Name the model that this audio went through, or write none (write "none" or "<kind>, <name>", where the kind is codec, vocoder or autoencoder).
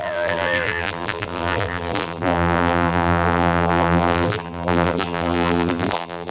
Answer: vocoder, BigVGAN v2